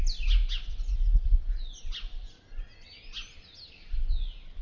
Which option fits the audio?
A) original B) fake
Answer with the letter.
A